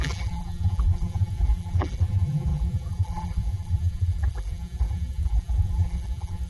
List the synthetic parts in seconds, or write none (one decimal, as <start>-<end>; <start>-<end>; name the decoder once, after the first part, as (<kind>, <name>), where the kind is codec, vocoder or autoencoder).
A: 0.0-6.5 (vocoder, BigVGAN v2)